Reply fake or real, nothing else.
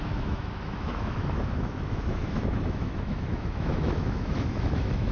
fake